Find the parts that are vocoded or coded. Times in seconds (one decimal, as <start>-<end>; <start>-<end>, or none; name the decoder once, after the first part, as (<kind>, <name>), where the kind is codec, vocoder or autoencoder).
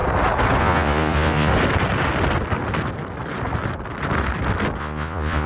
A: 0.6-1.5 (vocoder, Vocos); 4.8-5.5